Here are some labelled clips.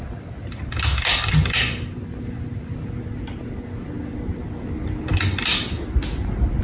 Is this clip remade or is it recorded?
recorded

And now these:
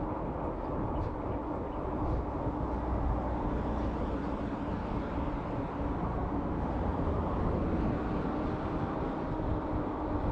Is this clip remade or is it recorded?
recorded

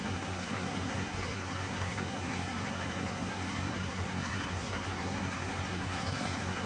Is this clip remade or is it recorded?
remade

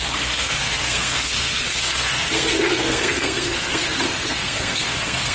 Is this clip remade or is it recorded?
remade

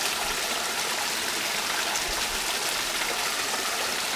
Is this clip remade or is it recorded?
recorded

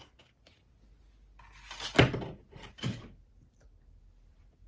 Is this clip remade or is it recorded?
recorded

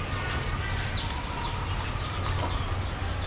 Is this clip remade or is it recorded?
recorded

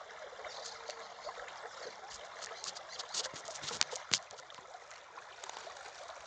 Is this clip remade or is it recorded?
recorded